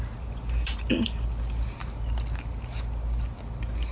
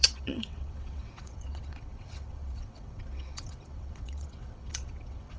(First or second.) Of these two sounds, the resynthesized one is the second